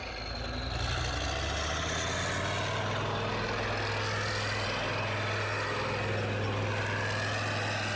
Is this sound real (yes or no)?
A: yes